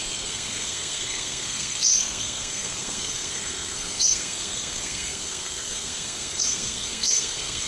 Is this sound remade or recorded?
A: remade